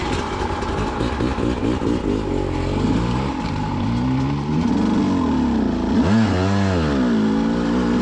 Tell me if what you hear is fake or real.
real